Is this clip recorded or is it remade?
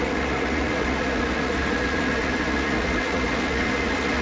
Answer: remade